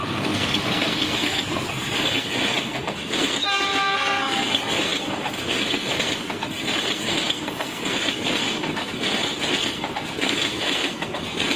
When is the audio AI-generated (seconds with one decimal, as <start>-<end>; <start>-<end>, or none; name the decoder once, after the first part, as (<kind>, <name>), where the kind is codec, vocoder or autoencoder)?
0.0-11.6 (codec, SNAC)